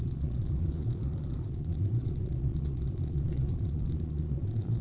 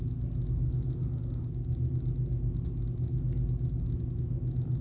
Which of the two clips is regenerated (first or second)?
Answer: first